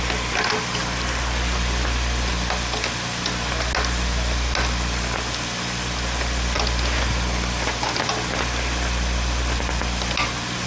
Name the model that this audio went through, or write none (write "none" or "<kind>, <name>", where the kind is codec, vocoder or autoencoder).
none